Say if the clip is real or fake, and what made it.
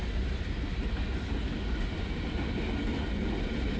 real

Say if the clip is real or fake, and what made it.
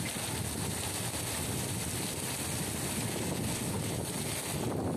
real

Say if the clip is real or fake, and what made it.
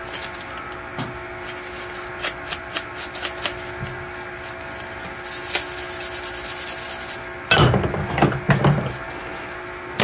real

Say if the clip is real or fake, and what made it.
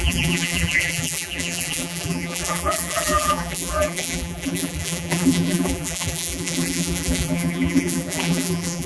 fake, vocoder, BigVGAN v2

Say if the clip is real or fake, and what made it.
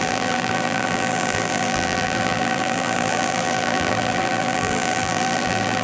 fake, vocoder, BigVGAN v2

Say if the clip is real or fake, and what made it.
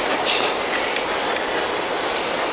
real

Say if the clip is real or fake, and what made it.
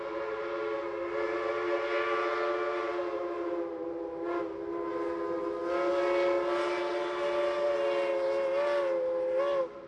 real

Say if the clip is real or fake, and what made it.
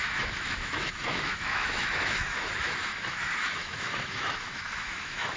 fake, autoencoder, DAC-VAE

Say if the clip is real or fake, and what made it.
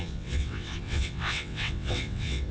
fake, vocoder, WaveNeXt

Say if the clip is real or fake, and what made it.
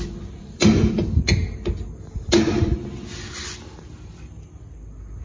real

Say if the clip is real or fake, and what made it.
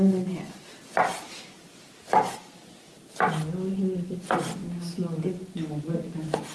real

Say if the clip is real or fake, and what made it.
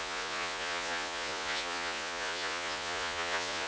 fake, vocoder, Vocos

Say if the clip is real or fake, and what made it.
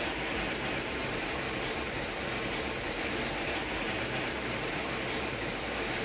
fake, vocoder, BigVGAN v2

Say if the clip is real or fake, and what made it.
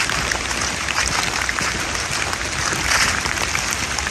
real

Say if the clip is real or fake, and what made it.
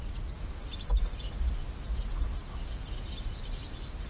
real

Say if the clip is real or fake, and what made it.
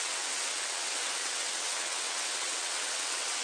fake, vocoder, WaveNeXt